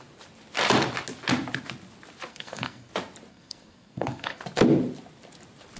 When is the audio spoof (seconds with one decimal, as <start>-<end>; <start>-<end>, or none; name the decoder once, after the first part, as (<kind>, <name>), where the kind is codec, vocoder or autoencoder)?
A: 2.3-2.9 (codec, SNAC); 3.3-4.4